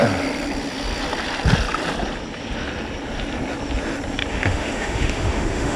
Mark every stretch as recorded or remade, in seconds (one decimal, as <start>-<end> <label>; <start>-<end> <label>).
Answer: 0.0-4.3 recorded; 4.3-5.8 remade